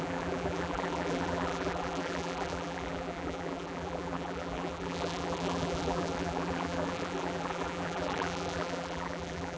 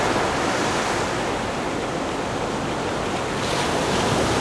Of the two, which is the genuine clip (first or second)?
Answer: second